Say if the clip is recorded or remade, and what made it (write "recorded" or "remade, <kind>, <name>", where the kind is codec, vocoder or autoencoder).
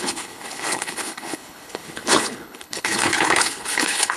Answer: remade, codec, HILCodec